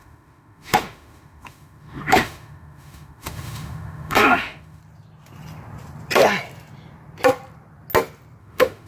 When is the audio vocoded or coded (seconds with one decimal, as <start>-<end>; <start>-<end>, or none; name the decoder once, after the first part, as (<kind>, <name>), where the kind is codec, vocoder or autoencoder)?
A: 0.0-4.8 (autoencoder, DAC-VAE); 8.4-8.9